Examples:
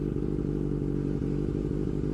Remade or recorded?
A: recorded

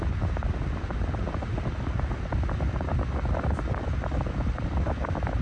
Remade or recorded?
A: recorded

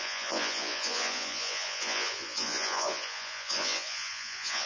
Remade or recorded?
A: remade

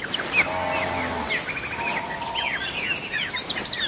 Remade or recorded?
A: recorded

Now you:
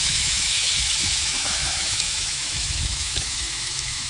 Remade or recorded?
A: remade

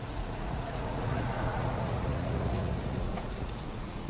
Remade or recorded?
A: remade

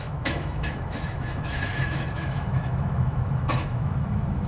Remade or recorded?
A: remade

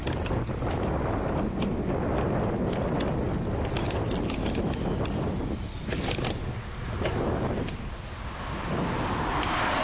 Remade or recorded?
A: recorded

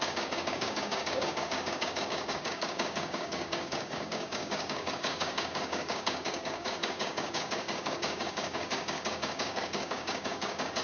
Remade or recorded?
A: remade